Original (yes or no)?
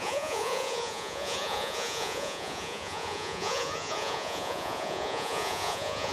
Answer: no